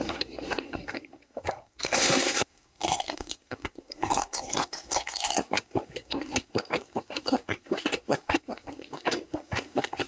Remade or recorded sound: remade